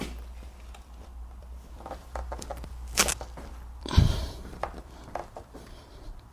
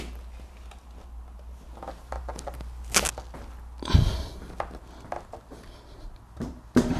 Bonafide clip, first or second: second